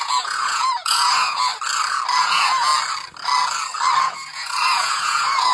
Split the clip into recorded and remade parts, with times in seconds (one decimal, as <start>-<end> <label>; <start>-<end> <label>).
0.0-1.5 remade; 1.5-2.2 recorded; 2.2-2.7 remade; 2.7-4.0 recorded; 4.0-5.5 remade